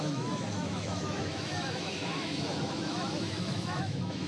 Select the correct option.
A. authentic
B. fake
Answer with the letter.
B